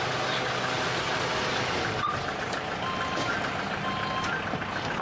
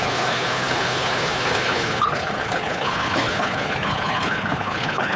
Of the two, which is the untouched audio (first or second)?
first